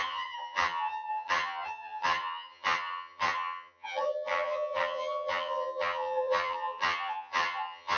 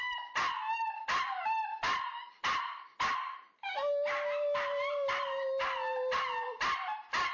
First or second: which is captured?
second